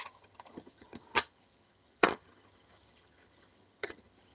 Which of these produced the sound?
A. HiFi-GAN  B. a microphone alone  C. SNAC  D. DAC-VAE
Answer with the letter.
A